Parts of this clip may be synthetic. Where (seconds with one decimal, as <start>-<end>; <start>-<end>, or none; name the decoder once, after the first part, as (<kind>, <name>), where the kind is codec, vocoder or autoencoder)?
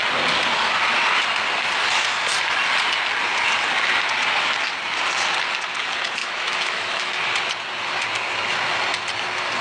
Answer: 6.2-7.2 (autoencoder, DAC-VAE)